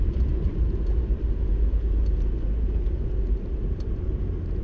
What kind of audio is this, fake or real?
fake